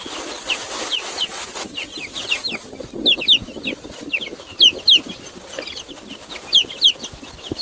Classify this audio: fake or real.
real